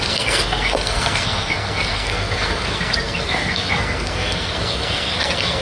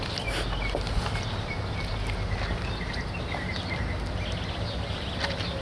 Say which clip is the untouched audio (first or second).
second